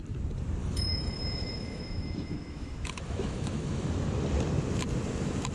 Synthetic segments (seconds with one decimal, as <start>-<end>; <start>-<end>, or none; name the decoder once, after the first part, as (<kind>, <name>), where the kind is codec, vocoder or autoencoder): 0.6-3.9 (autoencoder, DAC-VAE)